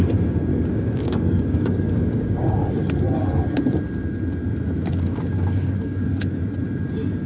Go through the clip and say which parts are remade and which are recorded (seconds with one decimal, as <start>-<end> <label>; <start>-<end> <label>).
0.0-0.5 recorded; 0.5-2.9 remade; 2.9-5.1 recorded; 5.1-6.4 remade; 6.4-7.3 recorded